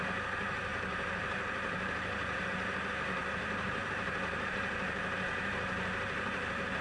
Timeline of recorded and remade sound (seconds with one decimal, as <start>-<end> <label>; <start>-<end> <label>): 0.0-0.7 recorded; 0.7-2.5 remade; 2.5-3.2 recorded; 3.2-4.6 remade; 4.6-6.8 recorded